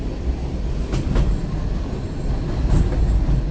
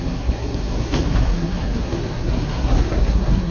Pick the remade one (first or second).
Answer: second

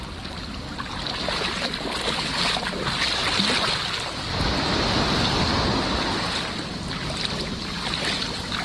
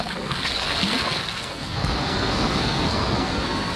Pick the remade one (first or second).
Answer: second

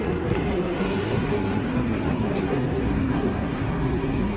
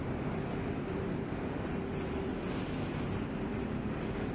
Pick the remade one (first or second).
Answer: first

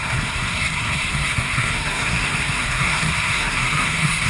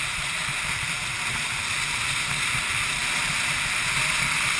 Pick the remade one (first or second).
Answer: first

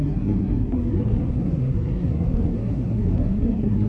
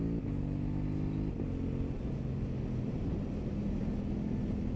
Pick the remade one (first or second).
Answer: first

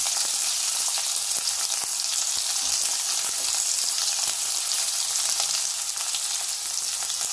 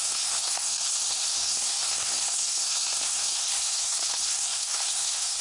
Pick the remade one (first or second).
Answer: second